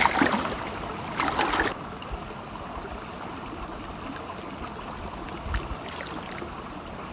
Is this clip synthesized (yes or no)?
no